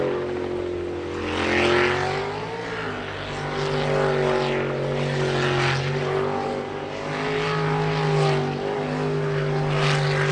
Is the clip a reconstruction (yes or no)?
no